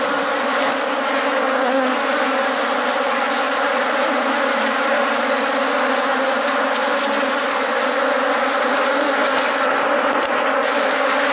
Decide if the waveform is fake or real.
real